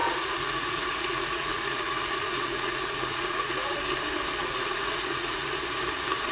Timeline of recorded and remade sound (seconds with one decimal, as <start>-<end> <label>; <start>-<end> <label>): 0.0-3.8 remade; 3.8-4.4 recorded; 4.4-5.5 remade; 5.5-6.3 recorded